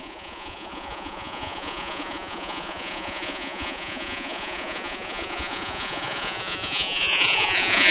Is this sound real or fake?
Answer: fake